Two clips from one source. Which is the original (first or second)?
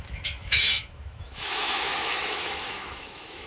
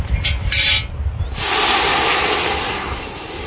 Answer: second